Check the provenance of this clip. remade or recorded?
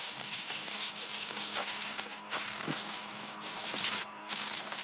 remade